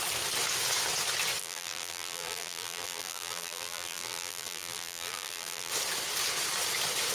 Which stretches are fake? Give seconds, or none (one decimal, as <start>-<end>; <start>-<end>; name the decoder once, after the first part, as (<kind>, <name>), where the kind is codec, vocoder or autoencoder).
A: 1.4-5.7 (vocoder, BigVGAN v2)